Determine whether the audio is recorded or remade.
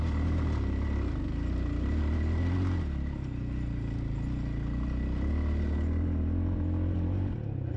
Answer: recorded